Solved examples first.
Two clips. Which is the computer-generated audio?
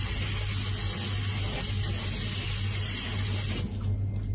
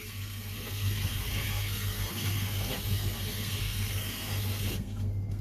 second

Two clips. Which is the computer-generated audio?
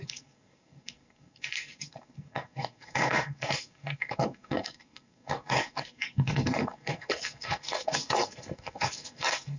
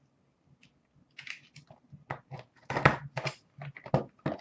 first